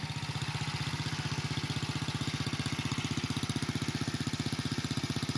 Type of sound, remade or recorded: recorded